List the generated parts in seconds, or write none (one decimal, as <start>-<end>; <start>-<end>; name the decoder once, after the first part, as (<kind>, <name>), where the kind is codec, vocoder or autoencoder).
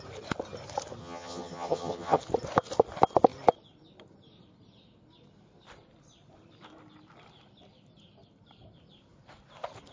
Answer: 1.0-2.2 (vocoder, HiFi-GAN)